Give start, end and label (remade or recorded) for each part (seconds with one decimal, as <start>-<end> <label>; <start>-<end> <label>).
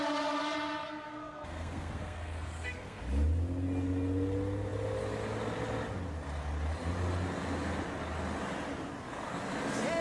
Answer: 0.0-0.8 recorded; 0.8-3.0 remade; 3.0-10.0 recorded